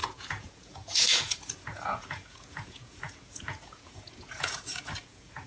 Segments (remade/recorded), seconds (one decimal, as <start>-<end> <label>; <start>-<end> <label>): 0.0-5.5 remade